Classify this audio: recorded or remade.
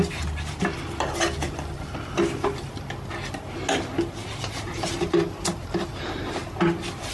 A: recorded